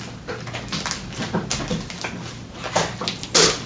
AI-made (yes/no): no